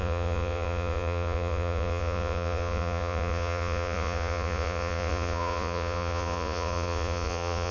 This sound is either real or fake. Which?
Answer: fake